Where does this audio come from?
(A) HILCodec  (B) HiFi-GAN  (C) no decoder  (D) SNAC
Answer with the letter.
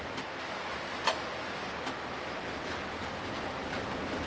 C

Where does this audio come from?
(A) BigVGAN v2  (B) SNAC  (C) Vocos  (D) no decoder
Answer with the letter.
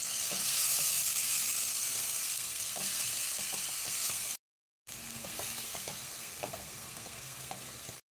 B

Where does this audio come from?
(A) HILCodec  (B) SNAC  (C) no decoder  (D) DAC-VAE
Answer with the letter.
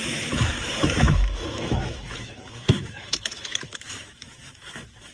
D